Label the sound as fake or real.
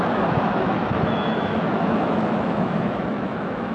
fake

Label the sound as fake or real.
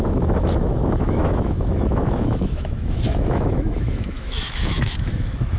fake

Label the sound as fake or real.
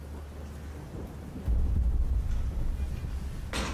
real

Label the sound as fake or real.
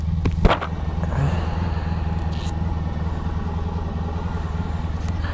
real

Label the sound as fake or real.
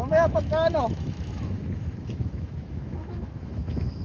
fake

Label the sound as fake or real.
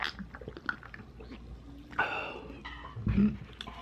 real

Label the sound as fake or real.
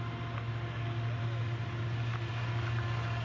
real